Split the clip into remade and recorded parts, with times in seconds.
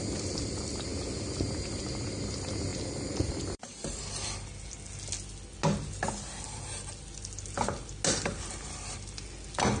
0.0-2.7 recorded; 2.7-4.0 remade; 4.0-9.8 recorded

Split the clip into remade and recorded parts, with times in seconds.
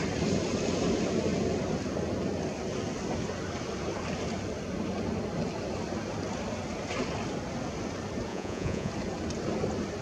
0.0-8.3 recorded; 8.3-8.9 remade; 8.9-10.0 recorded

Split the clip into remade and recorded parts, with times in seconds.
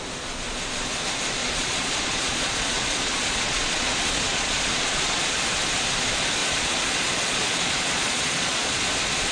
0.0-1.4 recorded; 1.4-5.2 remade; 5.2-6.4 recorded; 6.4-9.3 remade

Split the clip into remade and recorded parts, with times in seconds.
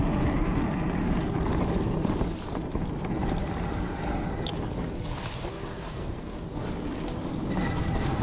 0.0-5.7 recorded; 5.7-6.3 remade; 6.3-8.2 recorded